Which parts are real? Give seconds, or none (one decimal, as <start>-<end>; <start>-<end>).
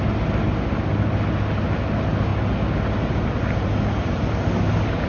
0.0-5.1